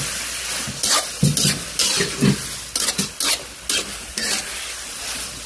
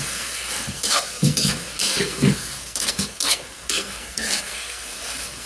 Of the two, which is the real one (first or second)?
first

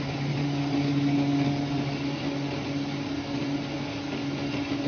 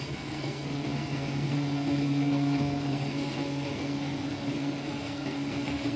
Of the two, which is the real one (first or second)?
first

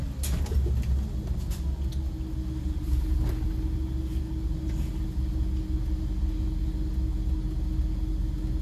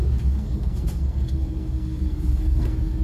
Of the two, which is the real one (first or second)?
first